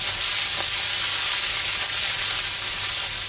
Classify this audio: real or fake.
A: real